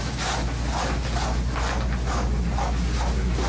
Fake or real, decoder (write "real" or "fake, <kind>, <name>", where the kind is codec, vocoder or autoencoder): real